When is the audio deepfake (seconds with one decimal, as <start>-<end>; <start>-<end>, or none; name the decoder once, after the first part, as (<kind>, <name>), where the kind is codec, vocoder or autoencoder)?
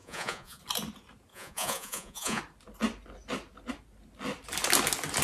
0.0-0.6 (vocoder, Vocos); 1.3-2.4